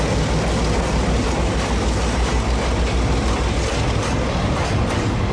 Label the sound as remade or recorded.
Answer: recorded